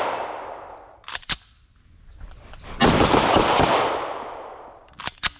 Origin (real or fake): real